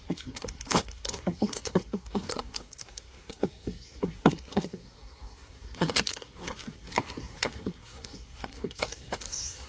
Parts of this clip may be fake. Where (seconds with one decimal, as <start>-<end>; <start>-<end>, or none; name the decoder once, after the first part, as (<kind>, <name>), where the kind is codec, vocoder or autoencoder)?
0.0-9.7 (codec, SNAC)